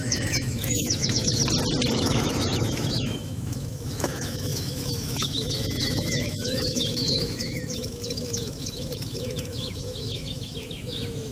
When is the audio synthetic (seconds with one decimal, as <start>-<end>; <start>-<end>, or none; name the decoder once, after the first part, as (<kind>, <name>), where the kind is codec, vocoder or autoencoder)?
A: 0.0-1.4 (autoencoder, DAC-VAE); 1.9-11.3